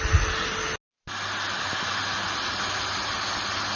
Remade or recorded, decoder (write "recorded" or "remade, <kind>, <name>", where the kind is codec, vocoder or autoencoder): recorded